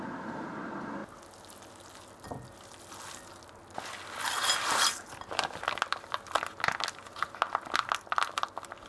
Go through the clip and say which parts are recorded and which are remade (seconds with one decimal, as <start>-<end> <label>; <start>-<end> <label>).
0.0-8.9 recorded